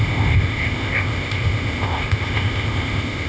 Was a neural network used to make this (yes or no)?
yes